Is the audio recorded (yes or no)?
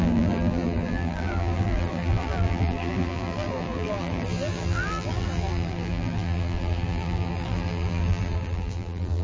no